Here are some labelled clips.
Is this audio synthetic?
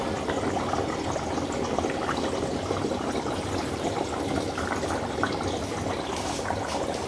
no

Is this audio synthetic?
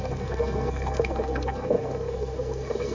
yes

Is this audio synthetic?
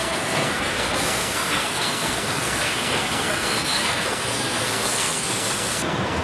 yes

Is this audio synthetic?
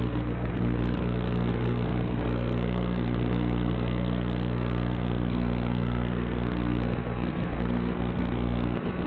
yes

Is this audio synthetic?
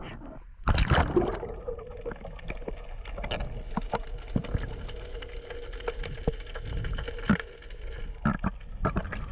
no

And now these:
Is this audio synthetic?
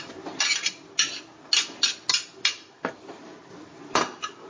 no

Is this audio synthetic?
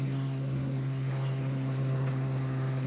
yes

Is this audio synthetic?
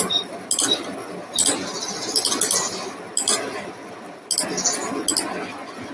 no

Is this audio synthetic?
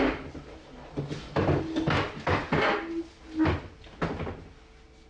no